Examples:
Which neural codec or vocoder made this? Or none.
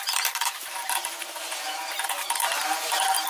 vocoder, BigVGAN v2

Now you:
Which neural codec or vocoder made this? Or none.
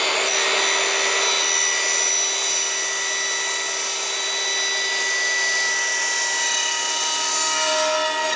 none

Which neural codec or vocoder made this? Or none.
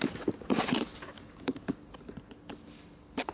none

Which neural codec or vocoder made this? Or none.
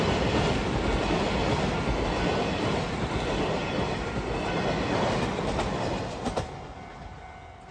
none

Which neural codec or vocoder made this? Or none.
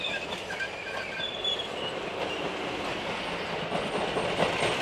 none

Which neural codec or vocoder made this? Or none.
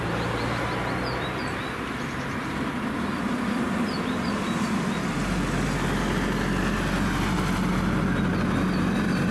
none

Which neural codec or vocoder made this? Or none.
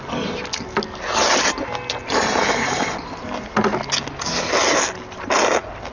none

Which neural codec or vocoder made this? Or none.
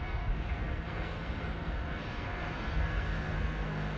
codec, SNAC